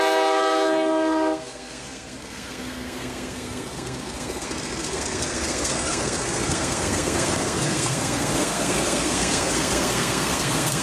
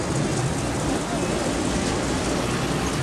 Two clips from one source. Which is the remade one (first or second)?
first